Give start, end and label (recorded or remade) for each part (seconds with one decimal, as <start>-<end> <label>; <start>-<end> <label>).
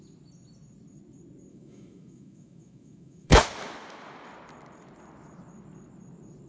0.0-1.5 recorded; 1.5-3.4 remade; 3.4-6.5 recorded